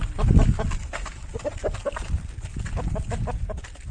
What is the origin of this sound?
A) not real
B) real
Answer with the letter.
B